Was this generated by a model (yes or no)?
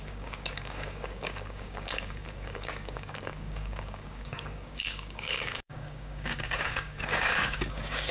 yes